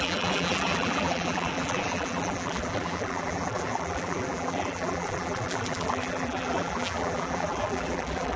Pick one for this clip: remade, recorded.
remade